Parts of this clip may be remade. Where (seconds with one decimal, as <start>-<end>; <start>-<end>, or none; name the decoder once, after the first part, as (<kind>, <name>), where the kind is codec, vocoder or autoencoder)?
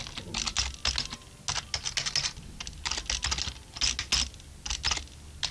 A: none